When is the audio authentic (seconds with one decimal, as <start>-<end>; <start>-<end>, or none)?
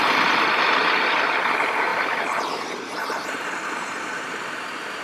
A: 0.0-5.0